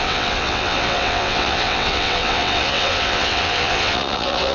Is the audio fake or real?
fake